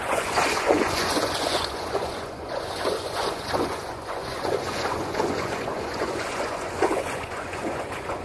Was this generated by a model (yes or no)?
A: yes